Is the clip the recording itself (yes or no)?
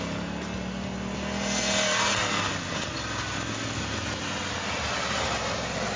yes